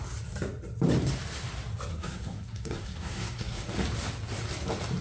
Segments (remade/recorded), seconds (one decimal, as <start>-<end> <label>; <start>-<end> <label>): 0.0-1.9 recorded; 1.9-3.6 remade; 3.6-5.0 recorded